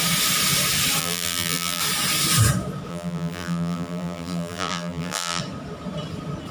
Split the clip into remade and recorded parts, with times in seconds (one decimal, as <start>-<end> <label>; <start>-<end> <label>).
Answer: 0.0-1.0 recorded; 1.0-1.8 remade; 1.8-2.9 recorded; 2.9-5.4 remade; 5.4-6.5 recorded